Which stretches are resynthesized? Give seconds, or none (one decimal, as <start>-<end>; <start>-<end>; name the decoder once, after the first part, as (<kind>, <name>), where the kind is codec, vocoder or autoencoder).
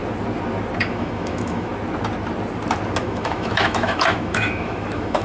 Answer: 0.8-1.7 (autoencoder, DAC-VAE); 3.0-5.2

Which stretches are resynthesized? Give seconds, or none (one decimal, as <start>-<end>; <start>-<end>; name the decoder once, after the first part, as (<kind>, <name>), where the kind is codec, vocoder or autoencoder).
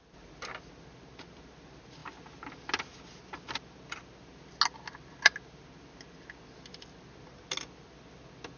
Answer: none